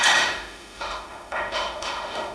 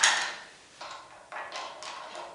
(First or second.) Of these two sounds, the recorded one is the second